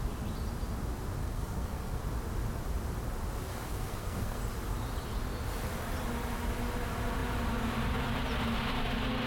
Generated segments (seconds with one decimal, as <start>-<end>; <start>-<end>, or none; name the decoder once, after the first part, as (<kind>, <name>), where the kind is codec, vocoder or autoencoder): 1.2-2.0 (codec, SNAC); 3.5-4.4